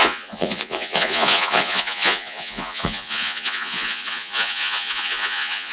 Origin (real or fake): fake